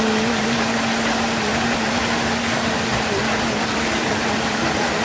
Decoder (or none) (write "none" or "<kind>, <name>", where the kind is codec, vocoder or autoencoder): none